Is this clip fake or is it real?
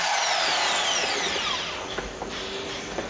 fake